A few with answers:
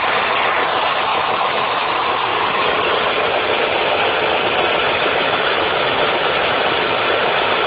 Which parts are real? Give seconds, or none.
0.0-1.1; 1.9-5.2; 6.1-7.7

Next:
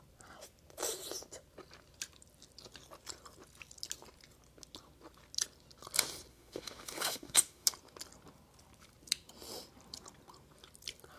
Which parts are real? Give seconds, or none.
0.0-6.3; 7.7-11.2

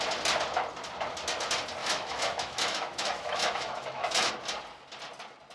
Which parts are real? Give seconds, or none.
0.0-1.8; 4.3-5.5

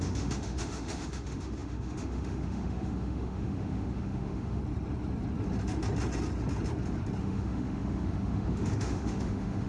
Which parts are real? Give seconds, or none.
4.6-7.2